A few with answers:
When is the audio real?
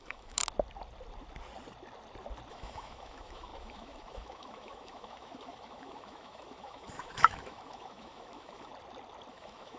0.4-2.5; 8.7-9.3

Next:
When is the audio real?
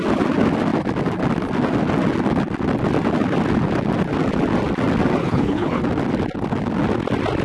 0.0-5.2; 5.8-7.4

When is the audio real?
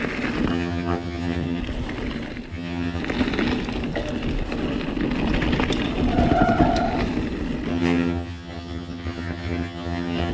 0.0-0.5; 1.6-2.5; 3.0-7.7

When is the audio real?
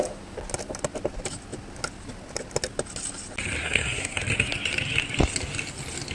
0.0-3.6; 4.2-6.1